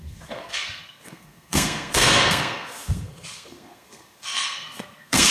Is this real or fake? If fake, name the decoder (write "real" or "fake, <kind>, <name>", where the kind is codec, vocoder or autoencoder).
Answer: fake, codec, SNAC